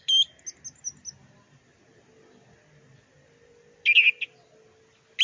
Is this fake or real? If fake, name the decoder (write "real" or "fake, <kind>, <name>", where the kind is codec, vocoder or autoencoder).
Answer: real